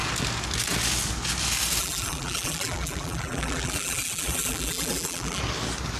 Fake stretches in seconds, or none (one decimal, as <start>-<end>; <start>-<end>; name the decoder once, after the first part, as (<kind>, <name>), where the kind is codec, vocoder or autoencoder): 1.8-5.4 (vocoder, BigVGAN v2)